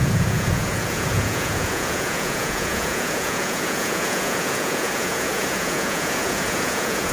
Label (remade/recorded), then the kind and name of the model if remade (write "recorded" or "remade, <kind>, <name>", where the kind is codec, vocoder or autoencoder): remade, vocoder, Vocos